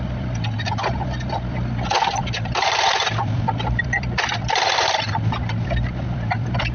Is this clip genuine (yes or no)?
no